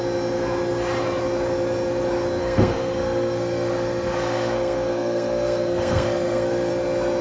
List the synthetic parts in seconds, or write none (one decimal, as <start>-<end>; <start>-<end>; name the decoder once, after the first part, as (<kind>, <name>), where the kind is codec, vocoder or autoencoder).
2.4-6.7 (codec, SNAC)